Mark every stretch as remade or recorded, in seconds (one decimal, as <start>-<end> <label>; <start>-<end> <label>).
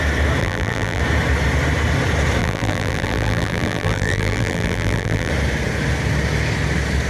0.0-0.4 recorded; 0.4-1.0 remade; 1.0-2.4 recorded; 2.4-5.3 remade; 5.3-7.1 recorded